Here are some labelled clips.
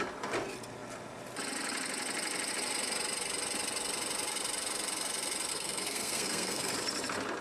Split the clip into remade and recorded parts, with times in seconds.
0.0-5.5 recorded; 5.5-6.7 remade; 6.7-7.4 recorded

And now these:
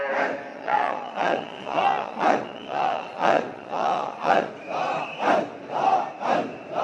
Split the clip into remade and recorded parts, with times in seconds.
0.0-0.5 recorded; 0.5-4.5 remade; 4.5-6.8 recorded

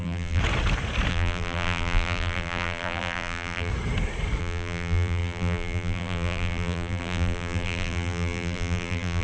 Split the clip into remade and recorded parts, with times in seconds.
0.0-0.4 remade; 0.4-1.1 recorded; 1.1-3.7 remade; 3.7-4.4 recorded; 4.4-9.2 remade